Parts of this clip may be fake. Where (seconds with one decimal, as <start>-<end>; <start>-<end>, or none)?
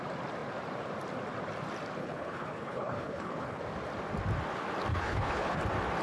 2.0-3.6; 4.9-5.6